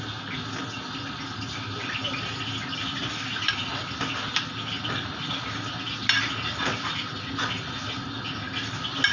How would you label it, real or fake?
real